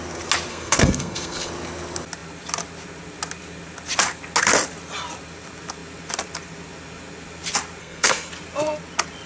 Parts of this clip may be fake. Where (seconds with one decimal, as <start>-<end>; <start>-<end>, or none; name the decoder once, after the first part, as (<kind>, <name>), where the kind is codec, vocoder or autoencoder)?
0.5-1.5 (codec, SNAC); 7.8-8.3